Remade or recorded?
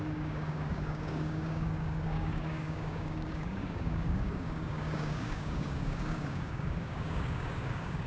remade